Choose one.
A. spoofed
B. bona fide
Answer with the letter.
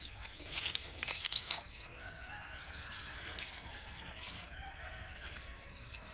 A